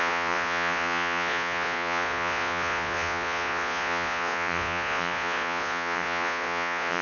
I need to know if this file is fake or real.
fake